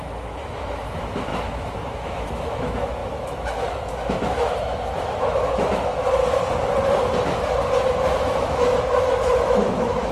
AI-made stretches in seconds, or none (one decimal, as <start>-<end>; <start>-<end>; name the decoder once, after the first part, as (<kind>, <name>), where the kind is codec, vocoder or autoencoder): 0.0-6.2 (autoencoder, DAC-VAE); 8.2-10.1